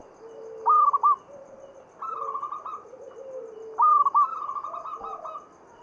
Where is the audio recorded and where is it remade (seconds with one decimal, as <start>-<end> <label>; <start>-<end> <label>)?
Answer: 0.0-5.8 recorded